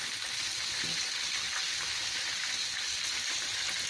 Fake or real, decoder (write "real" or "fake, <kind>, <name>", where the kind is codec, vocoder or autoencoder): real